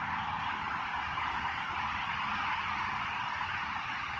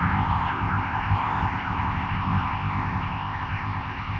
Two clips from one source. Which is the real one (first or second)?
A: first